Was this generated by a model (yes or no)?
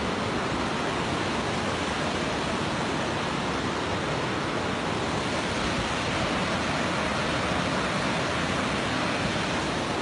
no